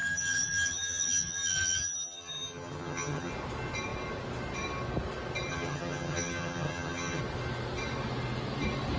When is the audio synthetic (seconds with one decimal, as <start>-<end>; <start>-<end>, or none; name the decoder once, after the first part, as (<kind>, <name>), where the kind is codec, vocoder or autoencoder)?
0.0-3.3 (vocoder, HiFi-GAN); 5.5-7.2